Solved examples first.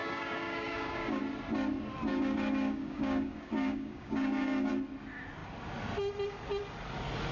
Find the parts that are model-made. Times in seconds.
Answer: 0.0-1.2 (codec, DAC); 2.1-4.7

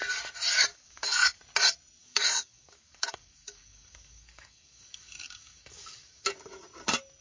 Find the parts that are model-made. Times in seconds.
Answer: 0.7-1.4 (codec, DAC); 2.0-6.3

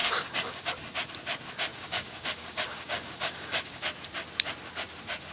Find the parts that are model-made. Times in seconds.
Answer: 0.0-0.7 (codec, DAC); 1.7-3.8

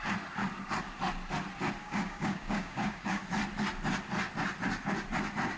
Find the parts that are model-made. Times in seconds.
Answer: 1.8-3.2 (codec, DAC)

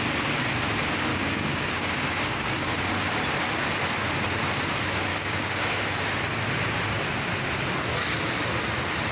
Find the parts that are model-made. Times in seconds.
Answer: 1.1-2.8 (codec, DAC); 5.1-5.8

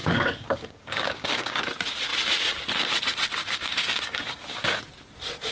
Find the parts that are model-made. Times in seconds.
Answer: 0.0-1.6 (codec, DAC); 3.4-4.8

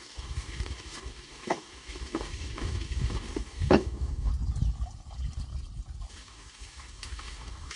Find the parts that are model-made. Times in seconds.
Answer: 0.0-4.3 (codec, DAC); 6.1-7.8

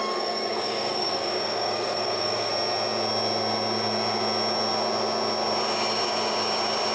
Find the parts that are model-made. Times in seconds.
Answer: 0.0-2.5 (codec, DAC)